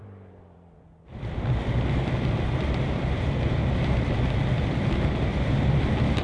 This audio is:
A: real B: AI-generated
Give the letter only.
B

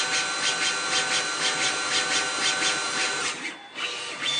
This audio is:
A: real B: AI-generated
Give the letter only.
A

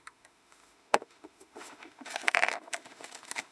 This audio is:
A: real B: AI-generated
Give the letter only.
B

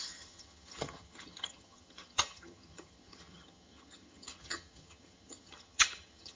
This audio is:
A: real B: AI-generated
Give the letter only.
B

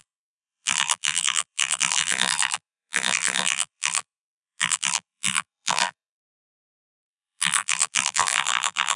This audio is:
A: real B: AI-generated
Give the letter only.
B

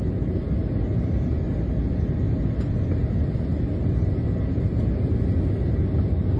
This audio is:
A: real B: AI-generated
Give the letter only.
A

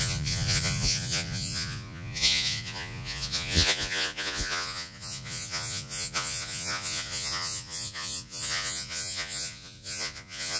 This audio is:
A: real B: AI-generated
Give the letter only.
B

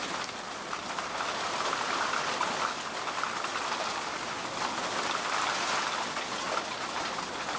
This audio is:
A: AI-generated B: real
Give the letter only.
B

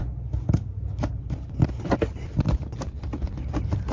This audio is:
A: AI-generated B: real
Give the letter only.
B